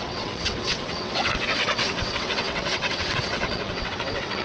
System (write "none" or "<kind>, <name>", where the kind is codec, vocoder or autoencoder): vocoder, WaveNeXt